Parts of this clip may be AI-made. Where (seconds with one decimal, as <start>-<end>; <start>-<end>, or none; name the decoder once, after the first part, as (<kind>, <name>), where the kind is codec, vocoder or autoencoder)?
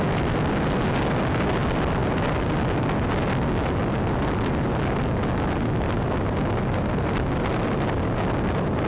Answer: none